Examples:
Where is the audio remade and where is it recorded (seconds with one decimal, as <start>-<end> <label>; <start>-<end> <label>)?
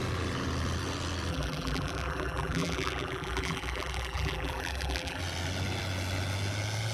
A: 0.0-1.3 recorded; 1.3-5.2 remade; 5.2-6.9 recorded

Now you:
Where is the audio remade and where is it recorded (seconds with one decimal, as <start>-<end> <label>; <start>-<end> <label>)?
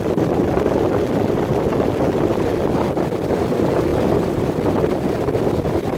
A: 0.0-1.5 recorded; 1.5-2.3 remade; 2.3-6.0 recorded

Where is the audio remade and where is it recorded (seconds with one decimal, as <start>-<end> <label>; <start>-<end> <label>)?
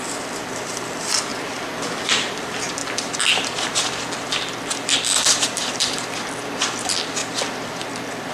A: 0.0-1.3 remade; 1.3-2.1 recorded; 2.1-7.2 remade; 7.2-8.3 recorded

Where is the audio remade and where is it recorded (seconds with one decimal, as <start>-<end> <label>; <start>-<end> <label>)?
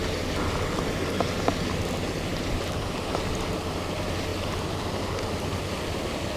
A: 0.0-4.3 recorded; 4.3-5.7 remade; 5.7-6.4 recorded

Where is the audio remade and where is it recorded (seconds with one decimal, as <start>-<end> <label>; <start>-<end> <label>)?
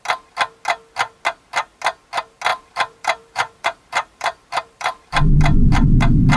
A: 0.0-2.5 recorded; 2.5-6.4 remade